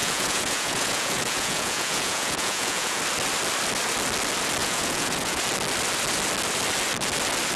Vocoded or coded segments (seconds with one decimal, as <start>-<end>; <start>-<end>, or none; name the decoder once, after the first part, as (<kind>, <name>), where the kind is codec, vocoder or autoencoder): 0.0-3.0 (vocoder, Vocos); 4.6-5.4